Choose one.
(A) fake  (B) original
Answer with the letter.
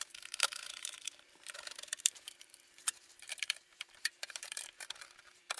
A